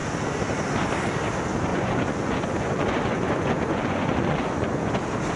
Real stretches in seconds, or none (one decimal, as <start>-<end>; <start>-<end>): 0.0-1.7; 4.9-5.4